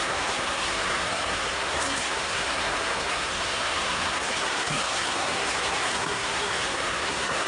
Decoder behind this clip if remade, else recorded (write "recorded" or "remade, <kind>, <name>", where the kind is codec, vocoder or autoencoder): remade, codec, SNAC